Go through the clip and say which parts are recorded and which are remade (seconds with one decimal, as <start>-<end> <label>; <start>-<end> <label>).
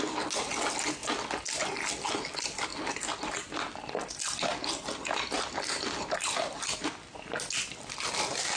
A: 0.0-8.6 recorded